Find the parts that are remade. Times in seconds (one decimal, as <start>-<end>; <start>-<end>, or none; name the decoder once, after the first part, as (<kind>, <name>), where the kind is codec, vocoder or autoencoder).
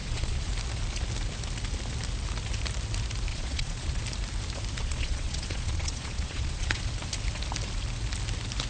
0.0-0.5 (vocoder, Vocos); 3.3-4.0; 4.8-6.8